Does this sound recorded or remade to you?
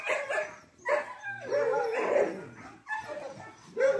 recorded